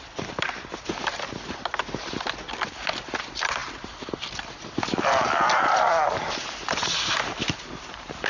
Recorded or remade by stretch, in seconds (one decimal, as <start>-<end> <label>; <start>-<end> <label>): 0.0-8.3 recorded